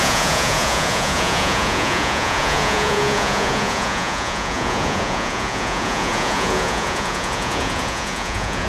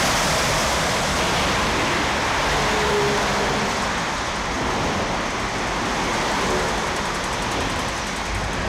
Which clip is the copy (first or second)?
first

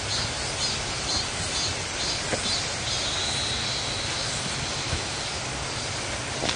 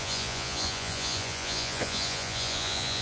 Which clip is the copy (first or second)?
second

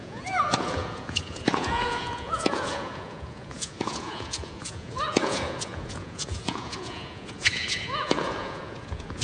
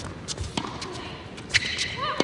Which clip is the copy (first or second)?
first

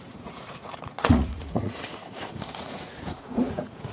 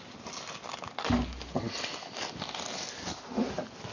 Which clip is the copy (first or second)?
first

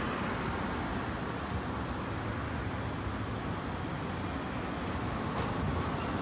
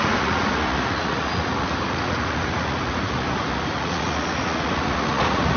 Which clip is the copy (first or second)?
second